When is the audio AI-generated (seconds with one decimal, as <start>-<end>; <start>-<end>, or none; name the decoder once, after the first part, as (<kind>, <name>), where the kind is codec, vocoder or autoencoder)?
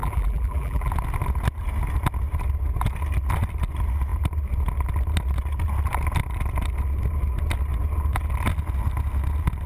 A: 0.0-0.9 (vocoder, BigVGAN v2)